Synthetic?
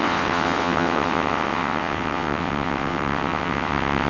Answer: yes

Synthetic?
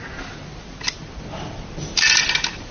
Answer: no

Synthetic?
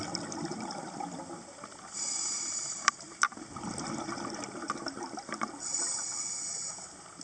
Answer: no